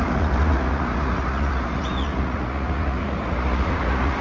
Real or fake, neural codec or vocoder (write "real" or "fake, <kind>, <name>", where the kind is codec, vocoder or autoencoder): fake, vocoder, Vocos